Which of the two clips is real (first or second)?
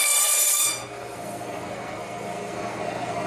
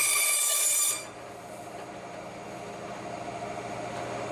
second